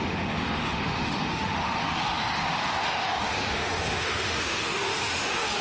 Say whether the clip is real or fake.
fake